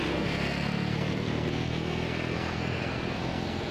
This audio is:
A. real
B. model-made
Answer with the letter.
B